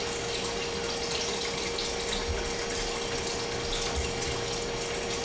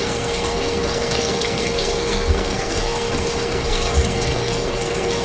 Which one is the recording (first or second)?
first